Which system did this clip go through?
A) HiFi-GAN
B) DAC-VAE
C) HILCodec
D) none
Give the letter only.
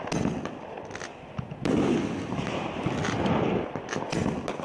D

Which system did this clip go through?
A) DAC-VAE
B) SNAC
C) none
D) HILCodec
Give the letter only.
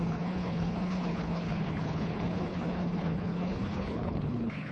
D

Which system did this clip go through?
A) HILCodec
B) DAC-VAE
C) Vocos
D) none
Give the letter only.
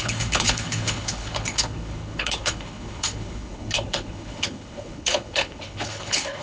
A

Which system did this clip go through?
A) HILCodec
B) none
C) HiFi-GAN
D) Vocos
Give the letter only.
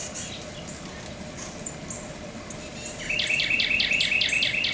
B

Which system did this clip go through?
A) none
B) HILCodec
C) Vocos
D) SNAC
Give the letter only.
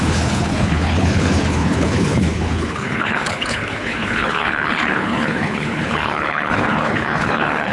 B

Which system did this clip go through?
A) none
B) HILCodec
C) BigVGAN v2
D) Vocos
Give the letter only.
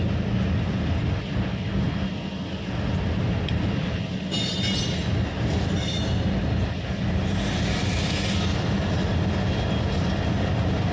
A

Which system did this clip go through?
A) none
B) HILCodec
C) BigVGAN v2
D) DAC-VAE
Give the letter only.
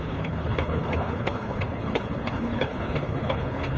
B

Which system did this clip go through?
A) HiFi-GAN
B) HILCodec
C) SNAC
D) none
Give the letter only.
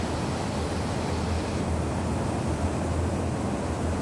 D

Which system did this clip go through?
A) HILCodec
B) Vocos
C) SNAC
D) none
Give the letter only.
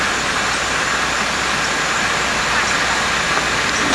D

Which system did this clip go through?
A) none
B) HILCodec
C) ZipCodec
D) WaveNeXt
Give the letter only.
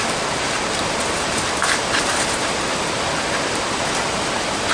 A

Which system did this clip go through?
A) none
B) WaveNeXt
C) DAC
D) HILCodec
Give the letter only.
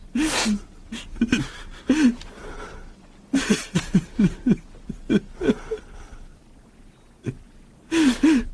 A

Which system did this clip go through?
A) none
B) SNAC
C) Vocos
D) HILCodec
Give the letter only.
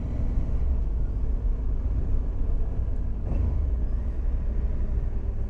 A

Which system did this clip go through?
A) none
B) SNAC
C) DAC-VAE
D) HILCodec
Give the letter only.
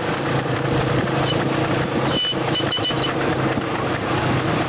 A